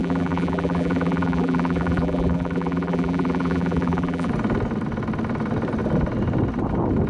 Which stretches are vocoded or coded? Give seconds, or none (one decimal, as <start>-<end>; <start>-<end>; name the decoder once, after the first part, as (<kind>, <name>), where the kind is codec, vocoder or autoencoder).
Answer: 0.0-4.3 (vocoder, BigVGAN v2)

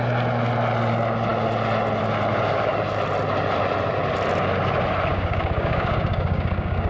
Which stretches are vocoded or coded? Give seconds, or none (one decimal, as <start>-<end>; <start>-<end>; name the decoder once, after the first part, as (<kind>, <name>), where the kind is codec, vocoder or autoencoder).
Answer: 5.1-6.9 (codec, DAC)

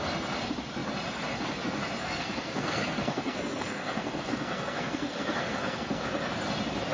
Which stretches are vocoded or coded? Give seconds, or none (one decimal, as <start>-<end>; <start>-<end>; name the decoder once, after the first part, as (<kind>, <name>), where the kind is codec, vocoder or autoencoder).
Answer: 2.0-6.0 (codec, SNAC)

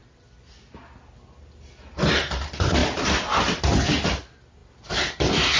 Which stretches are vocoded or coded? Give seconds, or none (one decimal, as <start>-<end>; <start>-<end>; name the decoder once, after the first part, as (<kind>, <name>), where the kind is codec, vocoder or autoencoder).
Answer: 2.8-3.6 (vocoder, BigVGAN v2)

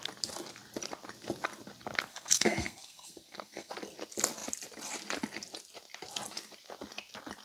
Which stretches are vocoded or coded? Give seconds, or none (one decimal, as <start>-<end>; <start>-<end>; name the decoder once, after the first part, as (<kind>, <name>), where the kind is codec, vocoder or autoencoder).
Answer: 2.1-3.7 (codec, SNAC)

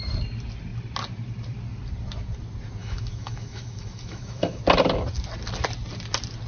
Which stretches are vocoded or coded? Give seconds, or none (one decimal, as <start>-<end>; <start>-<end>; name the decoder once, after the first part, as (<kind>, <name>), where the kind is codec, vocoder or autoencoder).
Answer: 2.8-4.6 (autoencoder, DAC-VAE)

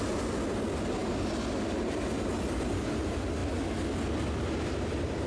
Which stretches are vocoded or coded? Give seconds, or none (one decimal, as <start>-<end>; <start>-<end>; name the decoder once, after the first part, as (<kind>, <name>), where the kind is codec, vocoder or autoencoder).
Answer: none